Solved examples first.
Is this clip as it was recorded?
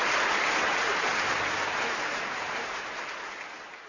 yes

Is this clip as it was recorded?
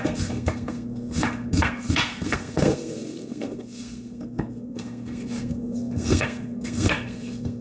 no